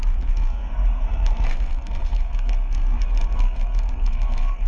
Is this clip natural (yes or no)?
no